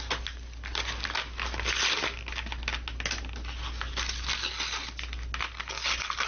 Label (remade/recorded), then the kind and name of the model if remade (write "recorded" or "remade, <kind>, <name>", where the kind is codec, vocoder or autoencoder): recorded